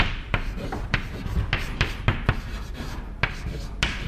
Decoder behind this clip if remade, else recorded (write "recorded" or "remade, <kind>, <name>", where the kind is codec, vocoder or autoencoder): recorded